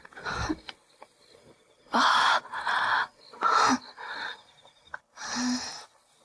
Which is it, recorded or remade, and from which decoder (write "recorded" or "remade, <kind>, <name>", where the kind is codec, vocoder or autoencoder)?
recorded